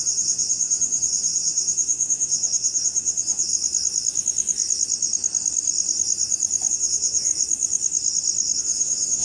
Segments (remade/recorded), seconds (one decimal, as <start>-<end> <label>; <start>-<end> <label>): 0.0-3.5 remade; 3.5-6.7 recorded; 6.7-7.3 remade; 7.3-8.6 recorded; 8.6-9.2 remade